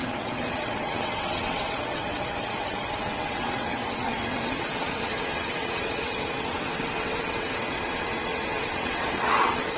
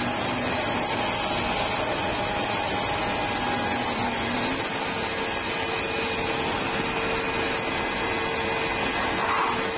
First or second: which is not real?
first